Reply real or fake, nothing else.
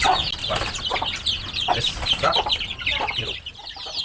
real